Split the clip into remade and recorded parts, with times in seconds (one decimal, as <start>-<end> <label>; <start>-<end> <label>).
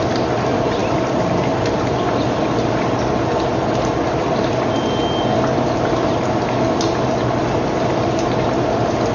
0.0-9.1 recorded